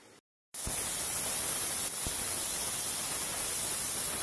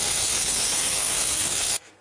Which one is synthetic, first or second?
second